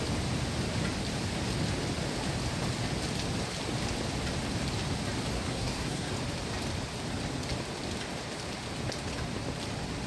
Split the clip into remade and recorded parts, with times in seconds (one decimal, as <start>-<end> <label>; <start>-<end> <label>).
0.0-5.3 recorded; 5.3-6.1 remade; 6.1-10.1 recorded